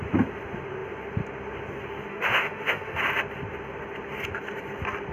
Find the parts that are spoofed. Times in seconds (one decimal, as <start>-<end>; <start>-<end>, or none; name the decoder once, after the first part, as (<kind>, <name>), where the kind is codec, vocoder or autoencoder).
2.1-3.0 (autoencoder, DAC-VAE)